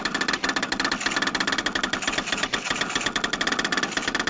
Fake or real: real